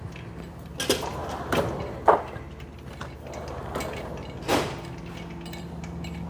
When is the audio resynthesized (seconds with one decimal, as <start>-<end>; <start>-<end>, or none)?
none